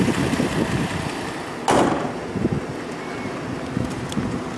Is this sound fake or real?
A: real